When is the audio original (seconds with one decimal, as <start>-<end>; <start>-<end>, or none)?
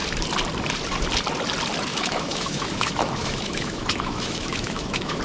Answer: 0.0-1.9